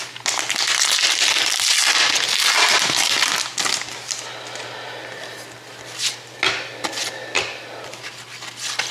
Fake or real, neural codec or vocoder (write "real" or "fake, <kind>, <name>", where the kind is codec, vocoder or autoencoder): real